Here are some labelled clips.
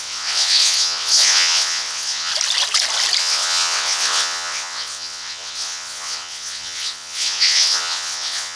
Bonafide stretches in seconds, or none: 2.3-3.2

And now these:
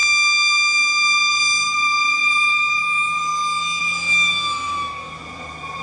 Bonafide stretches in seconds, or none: 0.0-0.8; 3.3-3.8

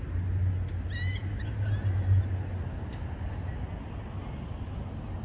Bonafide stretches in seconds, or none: 0.0-5.2

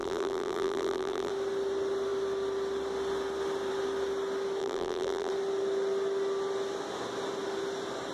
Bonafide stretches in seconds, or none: 1.3-4.6; 5.3-8.1

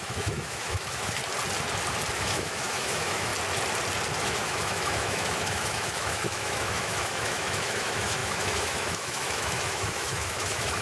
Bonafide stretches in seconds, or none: 1.2-2.1; 3.3-4.2

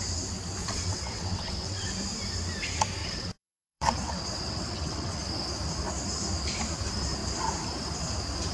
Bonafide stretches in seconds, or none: 0.0-0.6; 1.9-3.0; 5.2-8.5